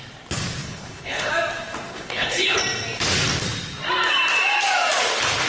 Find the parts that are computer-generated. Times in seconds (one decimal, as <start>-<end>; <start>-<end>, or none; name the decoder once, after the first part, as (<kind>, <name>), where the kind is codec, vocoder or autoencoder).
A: 0.6-1.3 (codec, HILCodec); 1.9-2.6

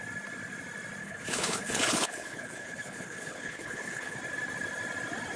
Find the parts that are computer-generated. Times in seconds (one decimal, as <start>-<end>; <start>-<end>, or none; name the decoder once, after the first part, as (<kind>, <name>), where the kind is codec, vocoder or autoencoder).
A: 1.0-4.2 (codec, HILCodec)

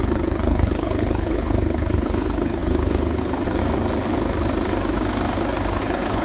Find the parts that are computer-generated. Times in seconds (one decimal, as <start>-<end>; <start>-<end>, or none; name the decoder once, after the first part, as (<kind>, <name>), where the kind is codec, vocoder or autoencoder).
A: 0.0-3.6 (codec, HILCodec); 5.8-6.2

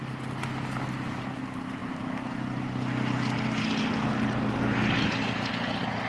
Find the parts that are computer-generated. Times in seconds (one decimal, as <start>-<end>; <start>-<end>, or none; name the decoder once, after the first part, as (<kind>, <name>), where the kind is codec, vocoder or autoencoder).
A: none

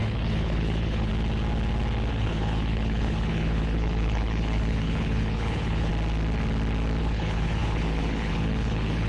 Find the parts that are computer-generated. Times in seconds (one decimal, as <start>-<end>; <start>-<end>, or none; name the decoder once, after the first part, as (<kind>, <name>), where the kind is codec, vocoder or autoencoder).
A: 0.0-1.1 (codec, HILCodec); 2.1-5.9; 7.0-9.1

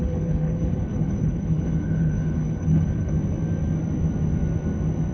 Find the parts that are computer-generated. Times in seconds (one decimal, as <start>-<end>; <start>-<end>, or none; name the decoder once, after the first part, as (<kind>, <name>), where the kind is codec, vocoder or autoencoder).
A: 0.0-3.1 (codec, HILCodec)